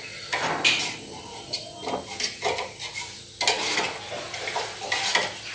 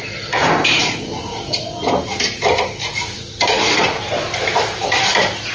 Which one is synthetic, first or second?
second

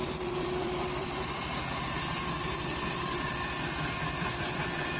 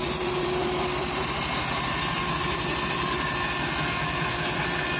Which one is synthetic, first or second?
first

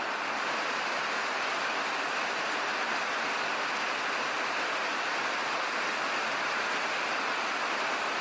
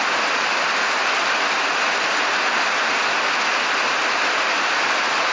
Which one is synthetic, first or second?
first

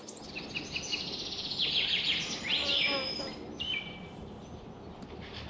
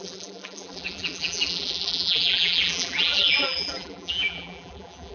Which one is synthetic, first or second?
second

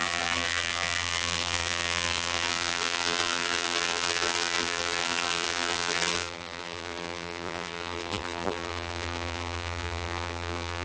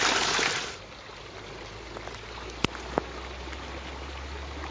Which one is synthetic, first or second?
first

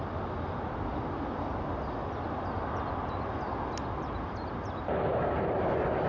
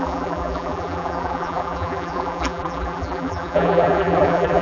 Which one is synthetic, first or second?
second